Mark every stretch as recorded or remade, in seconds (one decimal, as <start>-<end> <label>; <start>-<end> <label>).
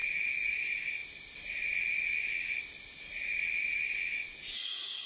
0.0-1.0 remade; 1.0-4.1 recorded; 4.1-5.1 remade